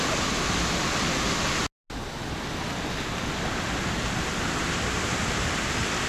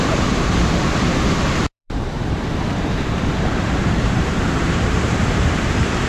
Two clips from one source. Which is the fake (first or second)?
second